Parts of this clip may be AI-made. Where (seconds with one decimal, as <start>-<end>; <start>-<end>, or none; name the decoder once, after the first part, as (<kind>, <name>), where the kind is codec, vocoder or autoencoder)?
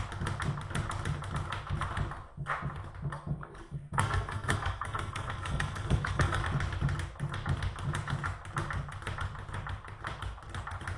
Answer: 3.3-6.4 (codec, SNAC)